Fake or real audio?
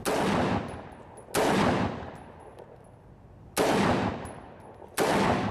real